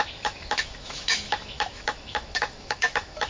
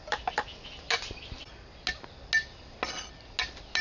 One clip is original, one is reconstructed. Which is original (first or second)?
second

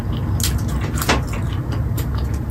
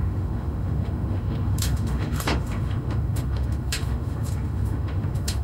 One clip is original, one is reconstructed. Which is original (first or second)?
first